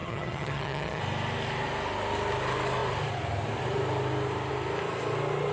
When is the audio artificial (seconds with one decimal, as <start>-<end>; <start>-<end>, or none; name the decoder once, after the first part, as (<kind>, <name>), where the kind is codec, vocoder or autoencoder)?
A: 0.0-1.0 (vocoder, HiFi-GAN)